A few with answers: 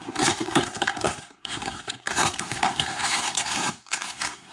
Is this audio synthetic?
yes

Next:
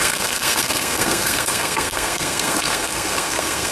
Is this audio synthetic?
yes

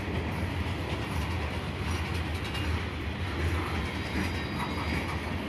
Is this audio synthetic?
no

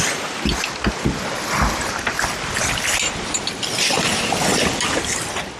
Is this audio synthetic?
no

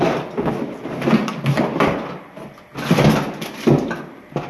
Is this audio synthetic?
no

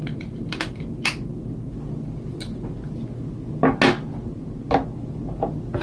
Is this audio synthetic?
no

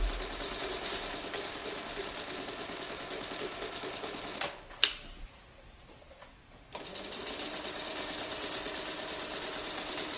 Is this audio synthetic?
no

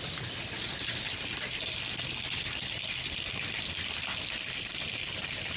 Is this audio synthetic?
no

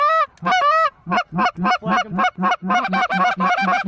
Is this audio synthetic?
no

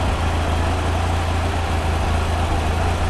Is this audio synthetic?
no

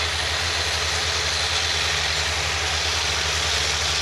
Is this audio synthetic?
no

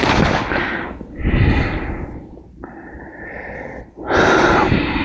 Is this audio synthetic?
no